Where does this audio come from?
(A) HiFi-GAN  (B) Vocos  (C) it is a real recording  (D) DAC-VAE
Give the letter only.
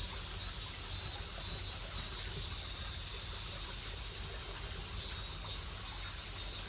C